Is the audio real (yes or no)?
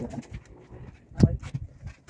yes